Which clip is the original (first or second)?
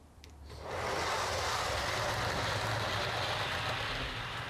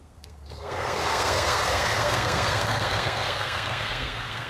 first